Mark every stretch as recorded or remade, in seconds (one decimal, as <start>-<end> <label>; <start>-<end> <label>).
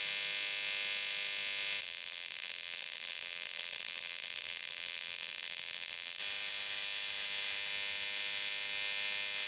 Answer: 0.0-1.8 recorded; 1.8-6.2 remade; 6.2-9.5 recorded